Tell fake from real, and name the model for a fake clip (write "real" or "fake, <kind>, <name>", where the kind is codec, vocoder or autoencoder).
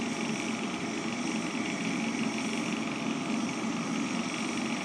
real